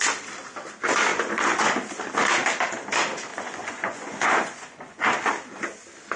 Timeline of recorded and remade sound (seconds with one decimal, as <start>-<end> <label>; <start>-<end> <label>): 0.0-1.1 recorded; 1.1-1.7 remade; 1.7-3.3 recorded; 3.3-5.0 remade; 5.0-6.2 recorded